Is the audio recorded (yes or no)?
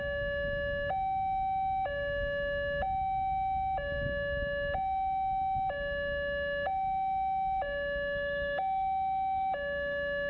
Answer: yes